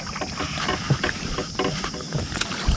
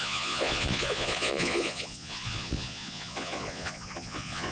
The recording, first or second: first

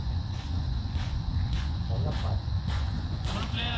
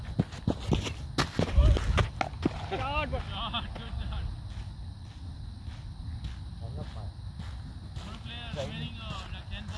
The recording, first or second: second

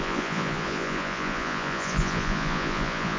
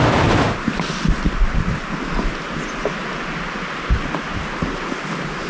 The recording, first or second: second